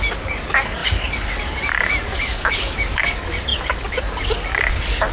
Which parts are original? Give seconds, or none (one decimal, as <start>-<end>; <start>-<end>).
none